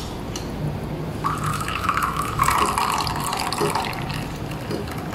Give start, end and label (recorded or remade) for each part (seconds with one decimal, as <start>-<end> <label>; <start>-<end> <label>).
0.0-1.5 recorded; 1.5-2.4 remade; 2.4-5.1 recorded